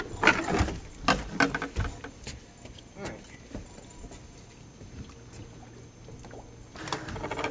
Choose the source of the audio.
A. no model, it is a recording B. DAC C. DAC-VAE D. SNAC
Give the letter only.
A